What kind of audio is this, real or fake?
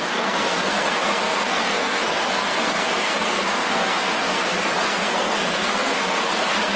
fake